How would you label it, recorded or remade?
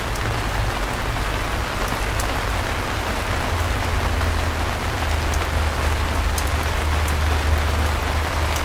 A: recorded